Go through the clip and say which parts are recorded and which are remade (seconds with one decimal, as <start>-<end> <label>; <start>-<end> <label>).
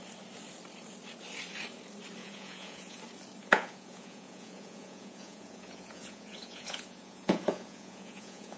0.0-2.2 recorded; 2.2-3.0 remade; 3.0-3.4 recorded; 3.4-8.6 remade